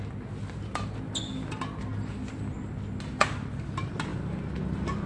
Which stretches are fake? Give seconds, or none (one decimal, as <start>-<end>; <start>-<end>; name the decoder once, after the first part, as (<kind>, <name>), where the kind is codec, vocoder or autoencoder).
none